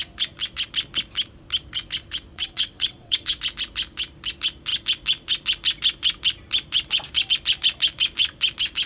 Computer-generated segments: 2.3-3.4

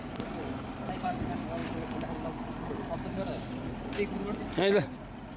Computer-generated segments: none

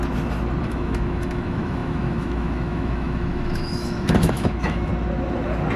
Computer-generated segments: 0.6-4.9

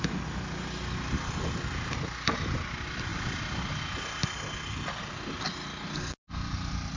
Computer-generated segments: none

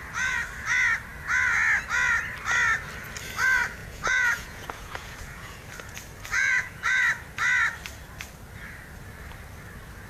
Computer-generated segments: 3.8-5.6; 6.3-7.0